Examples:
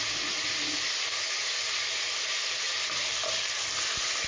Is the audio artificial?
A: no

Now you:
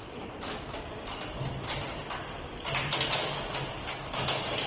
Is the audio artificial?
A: no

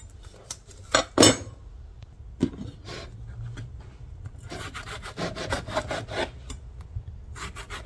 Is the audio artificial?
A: no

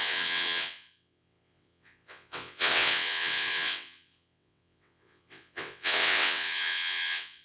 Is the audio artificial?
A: yes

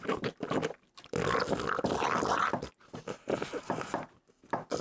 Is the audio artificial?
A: no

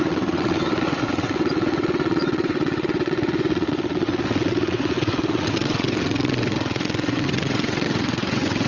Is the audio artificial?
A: yes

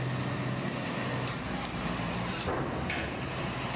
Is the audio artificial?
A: no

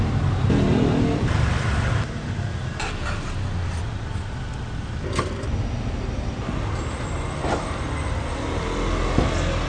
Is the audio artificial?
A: no